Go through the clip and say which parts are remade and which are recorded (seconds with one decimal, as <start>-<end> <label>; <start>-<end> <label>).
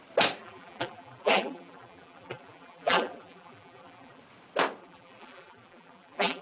0.0-0.4 recorded; 0.4-4.2 remade; 4.2-4.8 recorded; 4.8-6.4 remade